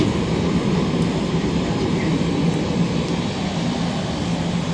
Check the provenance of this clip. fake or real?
real